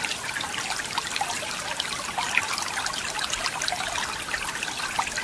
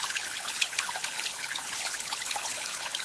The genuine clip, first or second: first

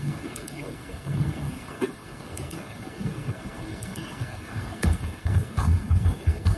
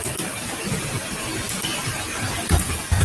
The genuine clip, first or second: second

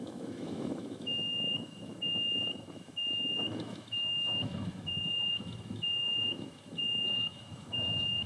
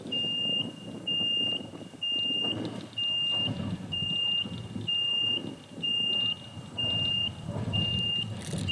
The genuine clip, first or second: second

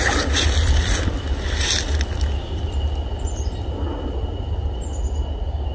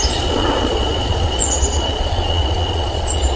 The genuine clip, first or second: first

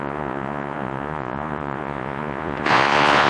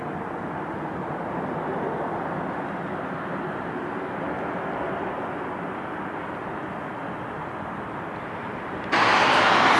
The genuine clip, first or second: second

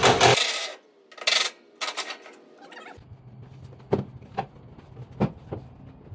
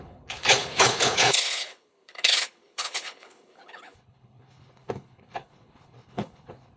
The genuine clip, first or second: first